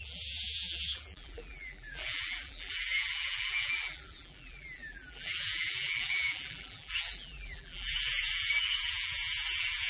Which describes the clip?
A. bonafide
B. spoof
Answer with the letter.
B